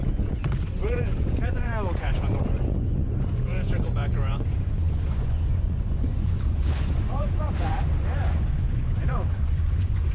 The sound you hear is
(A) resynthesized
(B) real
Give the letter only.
A